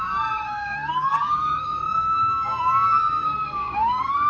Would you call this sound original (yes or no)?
no